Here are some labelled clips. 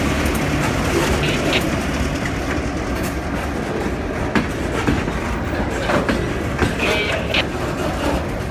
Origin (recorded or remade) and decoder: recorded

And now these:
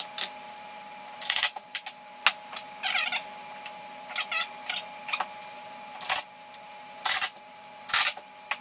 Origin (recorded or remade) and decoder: recorded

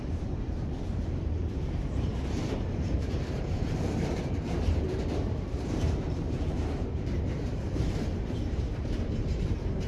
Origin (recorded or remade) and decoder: remade, vocoder, BigVGAN v2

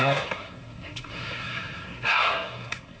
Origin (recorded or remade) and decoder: remade, codec, SNAC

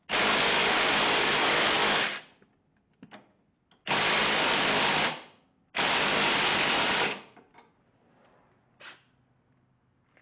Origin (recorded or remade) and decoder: recorded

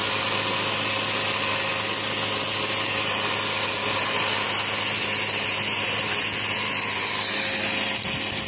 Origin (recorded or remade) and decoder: recorded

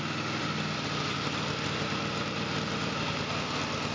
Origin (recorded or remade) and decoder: recorded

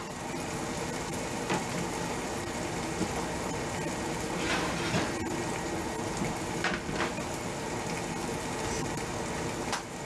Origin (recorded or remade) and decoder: recorded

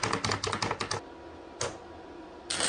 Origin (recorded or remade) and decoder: recorded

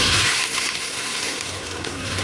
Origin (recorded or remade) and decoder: remade, codec, SNAC